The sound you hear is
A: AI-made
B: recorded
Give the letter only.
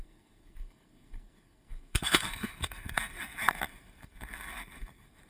A